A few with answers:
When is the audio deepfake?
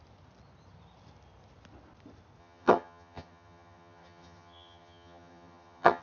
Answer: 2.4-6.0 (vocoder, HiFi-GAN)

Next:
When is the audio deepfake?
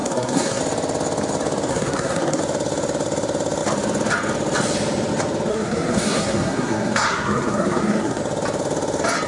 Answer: 0.0-0.6 (codec, SNAC); 1.7-2.4; 5.5-8.2